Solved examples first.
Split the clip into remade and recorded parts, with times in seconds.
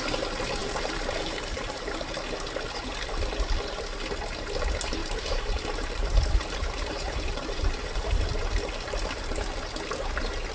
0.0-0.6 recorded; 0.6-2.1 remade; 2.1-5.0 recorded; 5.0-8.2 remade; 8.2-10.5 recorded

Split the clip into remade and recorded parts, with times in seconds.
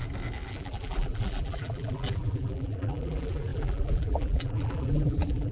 0.0-0.5 recorded; 0.5-5.5 remade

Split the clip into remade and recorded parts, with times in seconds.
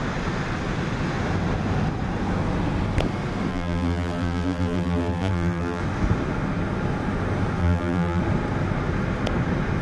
0.0-3.5 recorded; 3.5-5.8 remade; 5.8-7.6 recorded; 7.6-8.2 remade; 8.2-9.8 recorded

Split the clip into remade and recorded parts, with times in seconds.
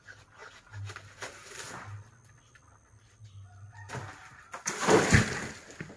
0.0-6.0 recorded